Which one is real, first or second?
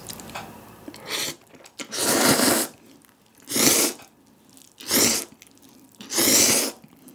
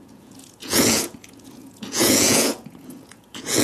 first